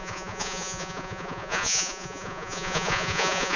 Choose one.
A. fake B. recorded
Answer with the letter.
A